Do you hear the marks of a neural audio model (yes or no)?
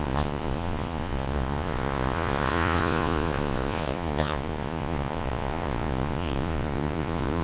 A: yes